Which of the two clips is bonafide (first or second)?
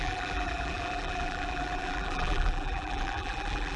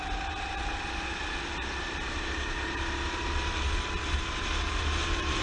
second